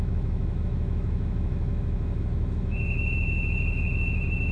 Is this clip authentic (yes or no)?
no